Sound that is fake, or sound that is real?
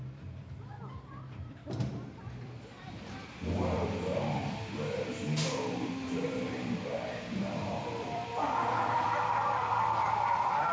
fake